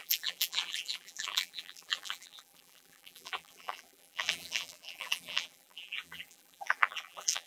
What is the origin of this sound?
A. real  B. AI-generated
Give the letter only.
B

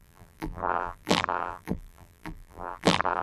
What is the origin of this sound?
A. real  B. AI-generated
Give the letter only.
B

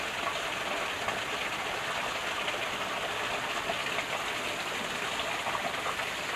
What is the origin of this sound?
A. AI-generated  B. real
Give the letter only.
B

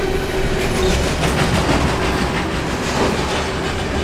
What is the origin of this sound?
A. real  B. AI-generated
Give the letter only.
A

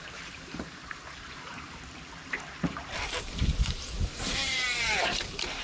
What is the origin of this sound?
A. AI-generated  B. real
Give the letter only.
A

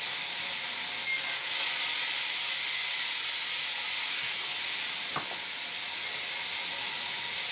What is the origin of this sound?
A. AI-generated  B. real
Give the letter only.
B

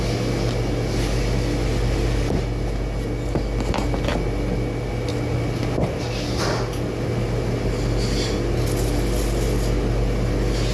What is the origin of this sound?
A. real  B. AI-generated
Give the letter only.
A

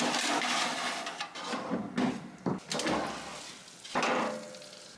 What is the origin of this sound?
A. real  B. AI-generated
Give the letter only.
A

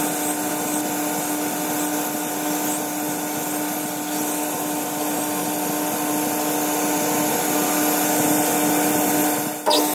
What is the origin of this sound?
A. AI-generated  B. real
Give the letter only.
B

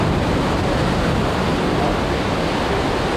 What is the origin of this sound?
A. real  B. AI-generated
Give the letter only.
A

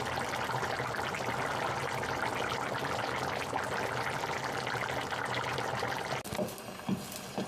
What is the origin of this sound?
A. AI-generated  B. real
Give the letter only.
B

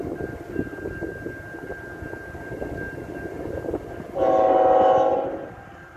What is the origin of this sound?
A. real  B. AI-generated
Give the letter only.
A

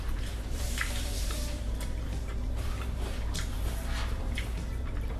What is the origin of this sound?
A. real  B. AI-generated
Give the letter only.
B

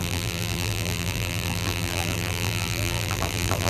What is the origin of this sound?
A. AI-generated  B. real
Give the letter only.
A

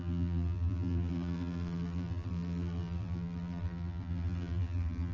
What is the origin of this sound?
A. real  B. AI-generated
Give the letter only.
B